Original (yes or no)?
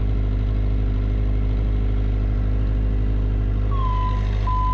yes